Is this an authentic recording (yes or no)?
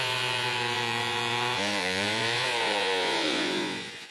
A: no